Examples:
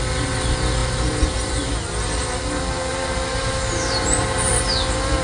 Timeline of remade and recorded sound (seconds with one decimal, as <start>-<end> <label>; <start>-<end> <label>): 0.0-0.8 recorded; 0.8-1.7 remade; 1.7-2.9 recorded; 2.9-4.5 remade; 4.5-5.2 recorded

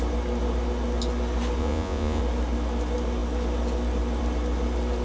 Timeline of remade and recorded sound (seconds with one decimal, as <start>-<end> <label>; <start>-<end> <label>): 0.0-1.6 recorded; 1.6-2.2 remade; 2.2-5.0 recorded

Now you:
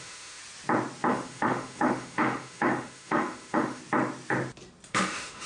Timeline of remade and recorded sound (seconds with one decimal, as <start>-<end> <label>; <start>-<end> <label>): 0.0-0.4 remade; 0.4-1.1 recorded; 1.1-3.8 remade; 3.8-4.9 recorded; 4.9-5.5 remade

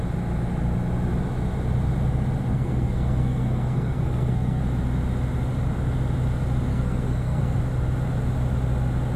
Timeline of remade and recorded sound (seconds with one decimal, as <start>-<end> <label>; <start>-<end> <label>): 0.0-2.5 recorded; 2.5-4.6 remade; 4.6-6.7 recorded; 6.7-7.6 remade; 7.6-9.2 recorded

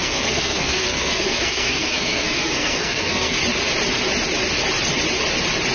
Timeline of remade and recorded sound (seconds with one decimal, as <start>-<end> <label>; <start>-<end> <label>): 0.0-3.4 remade; 3.4-5.7 recorded

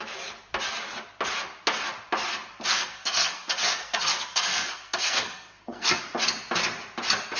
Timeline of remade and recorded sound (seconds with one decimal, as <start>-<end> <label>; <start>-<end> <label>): 0.0-2.7 recorded; 2.7-6.0 remade; 6.0-7.4 recorded